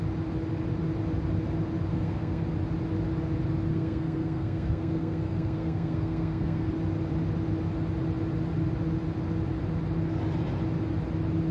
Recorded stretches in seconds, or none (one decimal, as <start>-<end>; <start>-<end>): 0.0-1.9; 2.4-3.7; 6.7-11.5